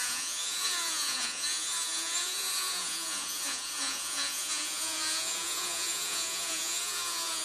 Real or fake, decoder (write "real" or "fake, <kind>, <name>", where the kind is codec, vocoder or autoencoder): fake, vocoder, Vocos